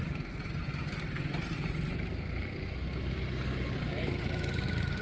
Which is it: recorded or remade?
recorded